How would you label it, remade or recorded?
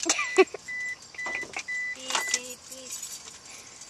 recorded